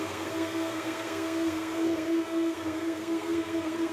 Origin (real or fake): fake